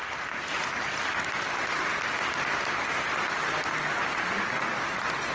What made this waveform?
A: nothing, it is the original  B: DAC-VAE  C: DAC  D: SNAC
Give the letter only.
A